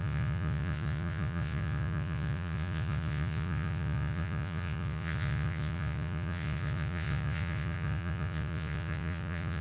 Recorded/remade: remade